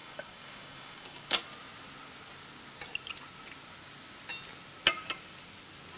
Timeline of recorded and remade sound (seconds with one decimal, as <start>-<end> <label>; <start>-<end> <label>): 0.0-1.4 remade; 1.4-6.0 recorded